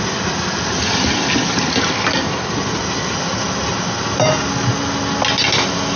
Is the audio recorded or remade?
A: recorded